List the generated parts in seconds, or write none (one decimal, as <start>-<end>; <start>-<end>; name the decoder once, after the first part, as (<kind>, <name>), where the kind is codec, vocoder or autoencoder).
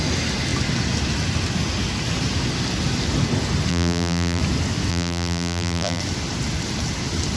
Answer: 3.7-4.4 (vocoder, BigVGAN v2); 4.9-6.0